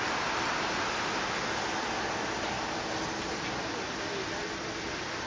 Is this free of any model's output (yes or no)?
yes